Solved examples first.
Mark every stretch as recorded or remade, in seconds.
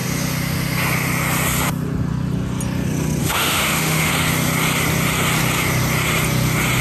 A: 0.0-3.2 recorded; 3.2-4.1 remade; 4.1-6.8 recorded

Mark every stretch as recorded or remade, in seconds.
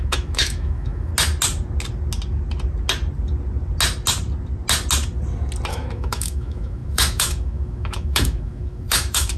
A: 0.0-1.1 remade; 1.1-5.7 recorded; 5.7-9.4 remade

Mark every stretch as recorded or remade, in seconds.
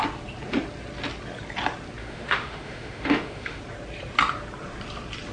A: 0.0-2.0 recorded; 2.0-3.6 remade; 3.6-5.3 recorded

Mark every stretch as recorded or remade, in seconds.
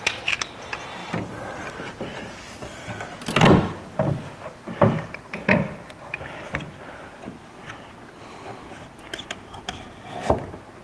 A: 0.0-10.8 recorded